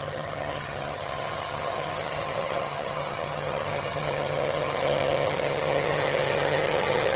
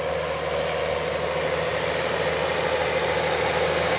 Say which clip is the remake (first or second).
first